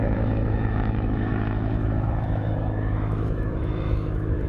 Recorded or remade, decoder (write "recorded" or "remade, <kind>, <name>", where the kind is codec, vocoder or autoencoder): remade, autoencoder, DAC-VAE